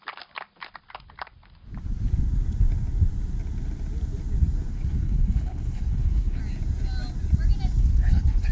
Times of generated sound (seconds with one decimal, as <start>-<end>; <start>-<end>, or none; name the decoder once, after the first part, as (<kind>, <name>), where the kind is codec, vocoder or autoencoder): 4.7-6.4 (codec, HILCodec); 7.8-8.5